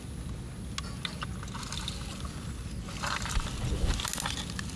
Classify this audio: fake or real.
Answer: real